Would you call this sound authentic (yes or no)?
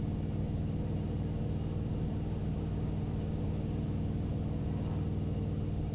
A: yes